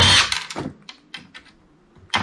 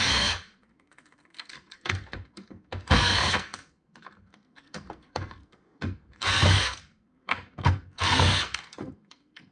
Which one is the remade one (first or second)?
second